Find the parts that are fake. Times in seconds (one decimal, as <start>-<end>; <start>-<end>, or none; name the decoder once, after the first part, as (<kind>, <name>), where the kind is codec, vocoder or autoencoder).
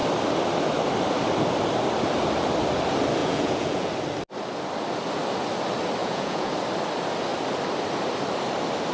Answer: 3.2-3.9 (vocoder, Vocos); 6.0-6.5